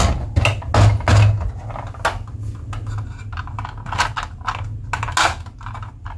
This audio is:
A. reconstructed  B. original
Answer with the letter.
B